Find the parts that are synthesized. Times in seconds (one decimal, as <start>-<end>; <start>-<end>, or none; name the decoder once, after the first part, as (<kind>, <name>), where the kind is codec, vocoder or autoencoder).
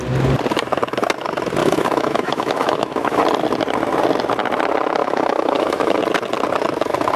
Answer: 1.6-3.2 (autoencoder, DAC-VAE); 5.0-6.0